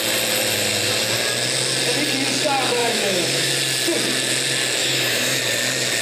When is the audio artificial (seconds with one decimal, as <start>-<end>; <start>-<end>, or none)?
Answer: 2.8-3.5; 4.8-5.4